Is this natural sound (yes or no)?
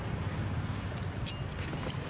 yes